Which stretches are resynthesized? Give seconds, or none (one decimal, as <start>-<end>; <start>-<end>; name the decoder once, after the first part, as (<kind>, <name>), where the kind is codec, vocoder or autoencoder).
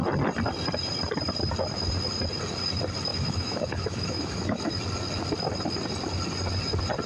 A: 3.1-4.7 (autoencoder, DAC-VAE)